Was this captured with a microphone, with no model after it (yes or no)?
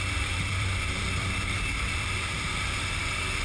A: no